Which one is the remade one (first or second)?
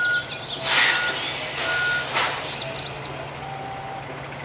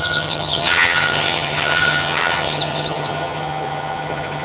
second